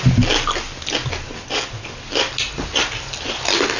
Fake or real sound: real